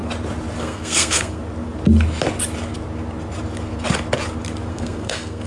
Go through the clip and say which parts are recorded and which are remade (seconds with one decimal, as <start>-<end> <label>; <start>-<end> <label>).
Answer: 0.0-0.6 recorded; 0.6-1.4 remade; 1.4-4.7 recorded; 4.7-5.5 remade